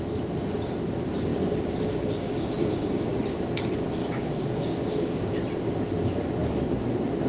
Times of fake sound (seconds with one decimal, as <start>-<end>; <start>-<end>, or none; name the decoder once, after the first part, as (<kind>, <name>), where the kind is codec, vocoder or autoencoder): 1.3-3.1 (codec, DAC); 4.0-5.4